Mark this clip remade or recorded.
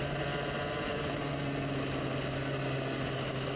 recorded